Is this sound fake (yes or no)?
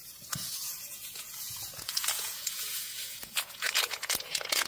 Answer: yes